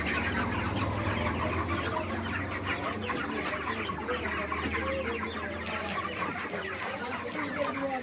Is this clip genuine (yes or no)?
yes